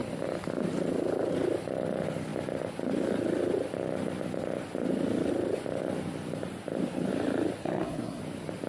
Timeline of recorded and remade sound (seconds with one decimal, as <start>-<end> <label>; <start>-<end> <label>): 0.0-7.6 recorded; 7.6-8.2 remade; 8.2-8.7 recorded